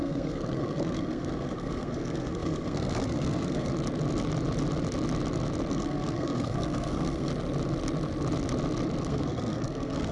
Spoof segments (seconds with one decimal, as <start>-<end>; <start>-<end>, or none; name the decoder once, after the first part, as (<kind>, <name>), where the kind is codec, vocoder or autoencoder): 0.0-3.7 (codec, SNAC); 5.7-7.3; 9.0-10.1

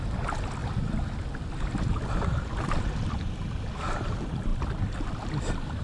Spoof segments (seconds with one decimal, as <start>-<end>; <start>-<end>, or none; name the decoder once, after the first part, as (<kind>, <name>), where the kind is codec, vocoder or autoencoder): none

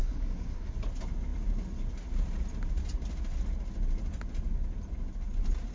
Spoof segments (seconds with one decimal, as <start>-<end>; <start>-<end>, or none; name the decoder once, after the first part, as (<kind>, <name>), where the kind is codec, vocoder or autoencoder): 0.0-0.7 (codec, SNAC)

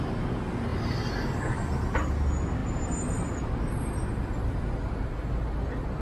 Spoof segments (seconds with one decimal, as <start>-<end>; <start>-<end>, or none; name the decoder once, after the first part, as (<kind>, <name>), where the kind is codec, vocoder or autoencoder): none

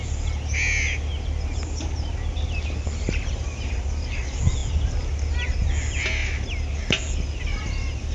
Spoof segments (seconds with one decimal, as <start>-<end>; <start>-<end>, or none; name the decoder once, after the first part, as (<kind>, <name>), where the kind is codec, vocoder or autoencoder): none

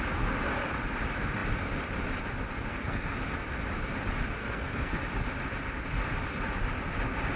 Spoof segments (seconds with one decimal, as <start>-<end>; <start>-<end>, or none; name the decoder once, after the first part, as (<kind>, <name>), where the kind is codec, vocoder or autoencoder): 2.7-3.2 (codec, SNAC); 4.4-5.0